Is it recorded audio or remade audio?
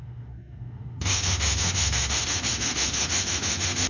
remade